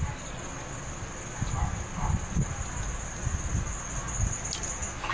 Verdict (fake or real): real